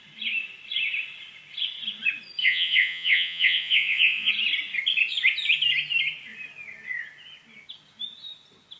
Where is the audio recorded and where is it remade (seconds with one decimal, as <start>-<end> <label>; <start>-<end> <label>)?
0.0-2.4 recorded; 2.4-4.3 remade; 4.3-8.8 recorded